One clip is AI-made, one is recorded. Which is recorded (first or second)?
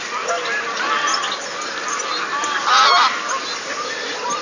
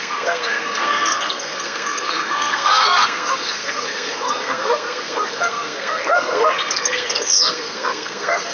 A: first